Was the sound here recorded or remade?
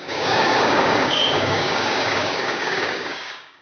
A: remade